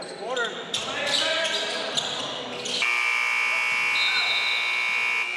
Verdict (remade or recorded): recorded